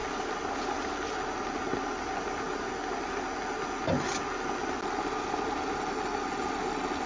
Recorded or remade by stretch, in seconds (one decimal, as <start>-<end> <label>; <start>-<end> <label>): 0.0-7.1 recorded